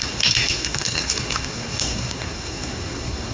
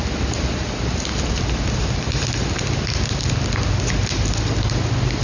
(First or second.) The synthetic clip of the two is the first